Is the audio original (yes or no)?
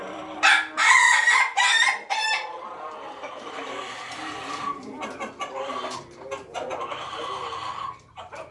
no